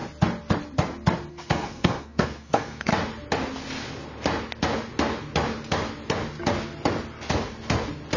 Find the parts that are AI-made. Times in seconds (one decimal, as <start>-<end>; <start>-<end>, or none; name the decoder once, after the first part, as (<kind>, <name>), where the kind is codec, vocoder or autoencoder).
1.3-2.9 (codec, SNAC)